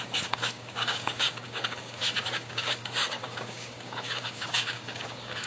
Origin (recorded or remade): remade